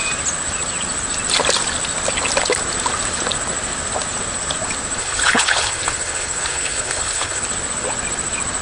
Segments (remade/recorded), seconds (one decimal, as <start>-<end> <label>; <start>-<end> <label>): 0.0-5.0 recorded; 5.0-7.4 remade; 7.4-8.6 recorded